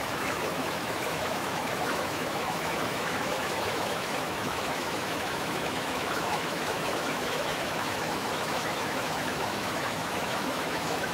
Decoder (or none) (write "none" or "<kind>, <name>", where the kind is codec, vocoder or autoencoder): autoencoder, DAC-VAE